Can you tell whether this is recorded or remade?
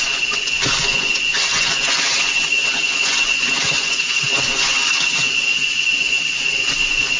remade